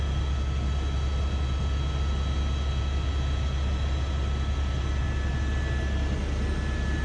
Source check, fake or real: real